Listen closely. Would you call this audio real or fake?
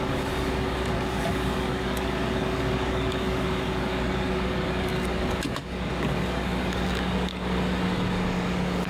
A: fake